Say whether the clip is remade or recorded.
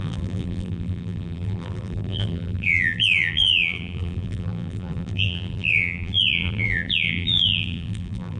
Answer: remade